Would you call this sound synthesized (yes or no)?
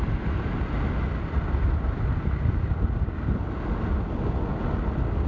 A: no